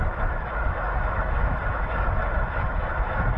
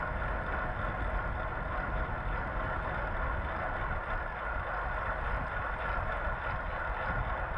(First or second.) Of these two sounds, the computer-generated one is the first